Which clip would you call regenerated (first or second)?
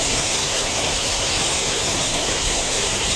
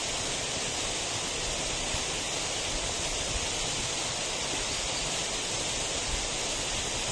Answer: first